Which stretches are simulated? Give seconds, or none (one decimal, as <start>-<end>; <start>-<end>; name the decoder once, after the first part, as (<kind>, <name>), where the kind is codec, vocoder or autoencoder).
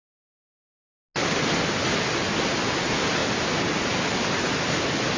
none